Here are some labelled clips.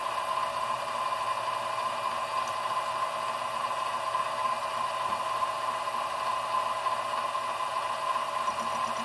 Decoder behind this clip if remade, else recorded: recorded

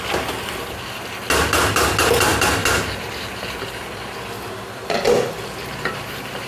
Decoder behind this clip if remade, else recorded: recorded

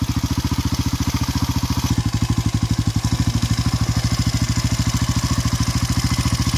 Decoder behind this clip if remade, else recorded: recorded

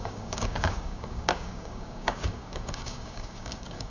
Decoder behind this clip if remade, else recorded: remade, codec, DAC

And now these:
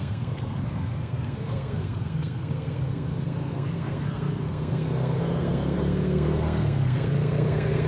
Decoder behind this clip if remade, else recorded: remade, codec, SNAC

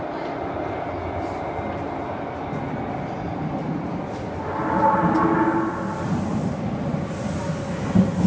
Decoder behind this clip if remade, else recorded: recorded